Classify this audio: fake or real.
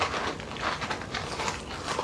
real